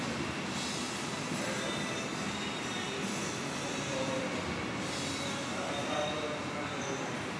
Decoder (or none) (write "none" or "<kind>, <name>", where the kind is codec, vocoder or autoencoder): none